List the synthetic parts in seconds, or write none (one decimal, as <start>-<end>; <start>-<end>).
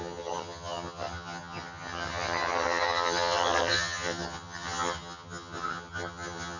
0.0-6.6